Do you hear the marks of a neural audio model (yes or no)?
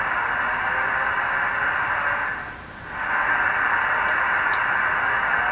no